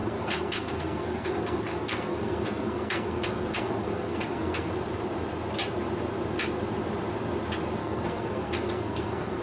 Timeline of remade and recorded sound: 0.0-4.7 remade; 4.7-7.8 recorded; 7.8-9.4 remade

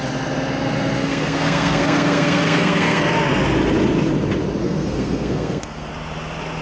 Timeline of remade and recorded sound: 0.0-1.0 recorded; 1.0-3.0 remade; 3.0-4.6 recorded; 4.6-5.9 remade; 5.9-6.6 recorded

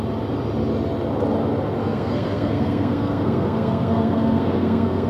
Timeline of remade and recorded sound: 0.0-1.8 recorded; 1.8-5.1 remade

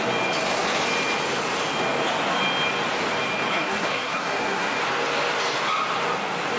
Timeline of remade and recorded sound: 0.0-3.5 recorded; 3.5-4.8 remade; 4.8-6.6 recorded